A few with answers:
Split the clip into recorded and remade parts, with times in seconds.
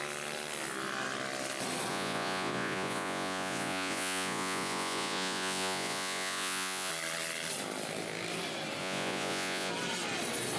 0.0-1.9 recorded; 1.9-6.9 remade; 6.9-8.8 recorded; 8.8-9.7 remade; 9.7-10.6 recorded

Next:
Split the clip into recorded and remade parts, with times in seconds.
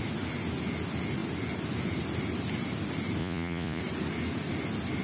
0.0-3.2 recorded; 3.2-3.8 remade; 3.8-5.0 recorded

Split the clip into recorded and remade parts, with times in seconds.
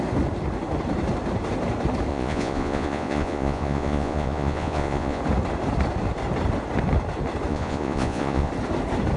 0.0-2.1 recorded; 2.1-5.2 remade; 5.2-7.5 recorded; 7.5-8.5 remade; 8.5-9.2 recorded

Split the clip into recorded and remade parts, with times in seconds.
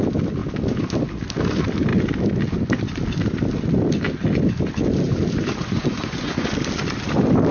0.0-5.6 recorded; 5.6-6.5 remade; 6.5-7.5 recorded